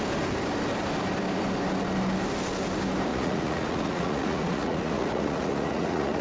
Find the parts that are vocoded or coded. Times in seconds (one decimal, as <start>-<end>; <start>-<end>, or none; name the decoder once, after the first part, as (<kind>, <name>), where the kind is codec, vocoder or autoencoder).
3.1-6.2 (vocoder, Vocos)